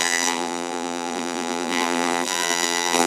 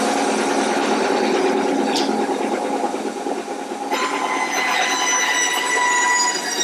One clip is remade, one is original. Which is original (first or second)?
second